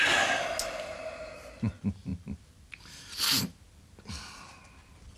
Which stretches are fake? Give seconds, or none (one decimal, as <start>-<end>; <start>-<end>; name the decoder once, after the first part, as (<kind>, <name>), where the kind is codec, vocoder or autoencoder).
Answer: none